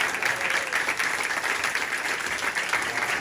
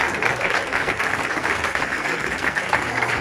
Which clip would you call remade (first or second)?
second